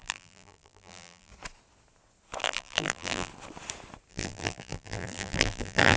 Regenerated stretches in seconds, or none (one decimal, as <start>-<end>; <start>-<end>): 0.0-1.3; 2.4-3.3; 4.1-6.0